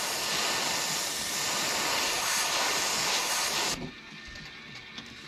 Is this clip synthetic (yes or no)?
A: no